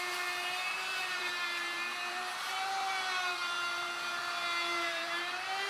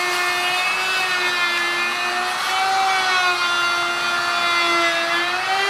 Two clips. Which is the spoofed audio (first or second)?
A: first